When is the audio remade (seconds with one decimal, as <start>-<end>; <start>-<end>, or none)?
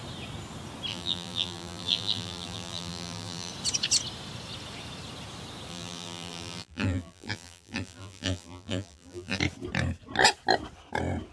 0.9-3.5; 5.7-9.4